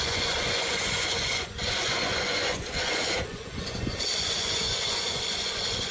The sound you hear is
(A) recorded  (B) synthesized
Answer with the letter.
B